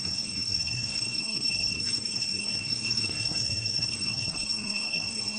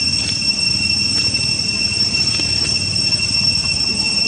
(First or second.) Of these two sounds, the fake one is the first